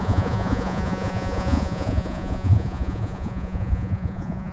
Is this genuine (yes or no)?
no